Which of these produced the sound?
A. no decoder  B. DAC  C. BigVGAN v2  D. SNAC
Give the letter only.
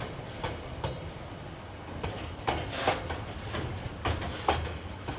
A